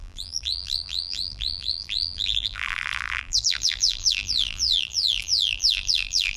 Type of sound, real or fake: fake